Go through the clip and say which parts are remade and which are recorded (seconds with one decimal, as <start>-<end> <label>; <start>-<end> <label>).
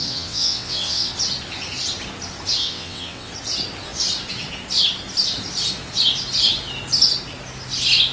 0.0-1.1 remade; 1.1-2.6 recorded; 2.6-3.3 remade; 3.3-8.1 recorded